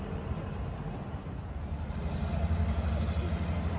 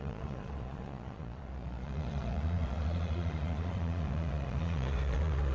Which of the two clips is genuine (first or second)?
first